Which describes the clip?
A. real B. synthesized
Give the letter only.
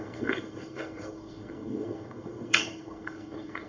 B